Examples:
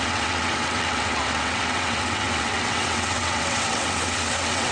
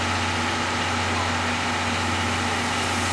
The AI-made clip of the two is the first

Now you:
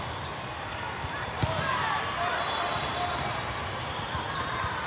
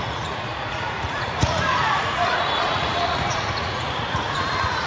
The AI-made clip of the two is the second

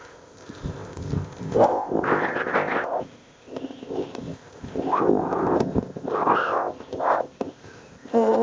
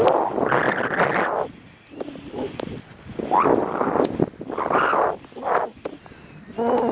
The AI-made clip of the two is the first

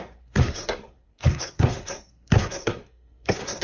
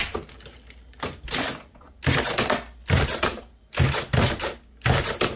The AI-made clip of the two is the first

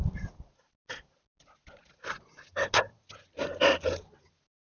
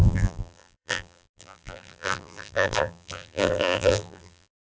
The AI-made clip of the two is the second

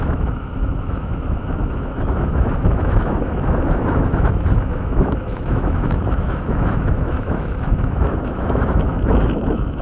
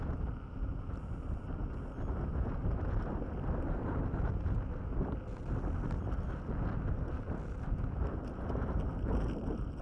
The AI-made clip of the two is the first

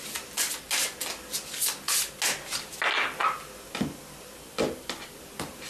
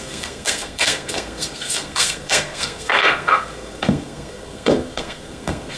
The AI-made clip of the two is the second